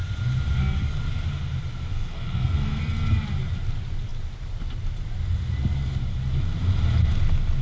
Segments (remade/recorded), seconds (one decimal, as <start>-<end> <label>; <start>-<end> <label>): 0.0-1.9 recorded; 1.9-2.8 remade; 2.8-7.6 recorded